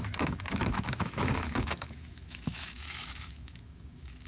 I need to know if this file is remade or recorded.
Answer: remade